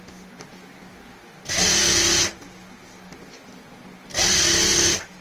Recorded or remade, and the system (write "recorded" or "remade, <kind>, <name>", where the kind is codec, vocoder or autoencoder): recorded